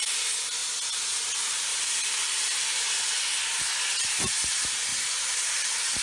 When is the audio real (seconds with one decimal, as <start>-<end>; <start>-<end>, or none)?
0.0-1.7; 3.1-4.9